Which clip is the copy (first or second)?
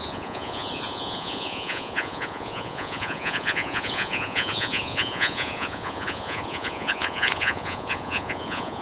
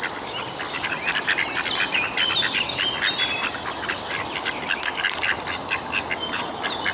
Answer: first